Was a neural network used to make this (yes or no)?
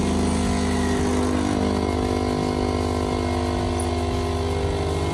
no